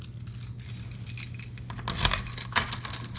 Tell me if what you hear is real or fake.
real